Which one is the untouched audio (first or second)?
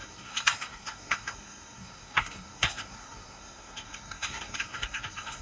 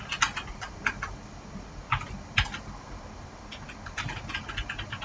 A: second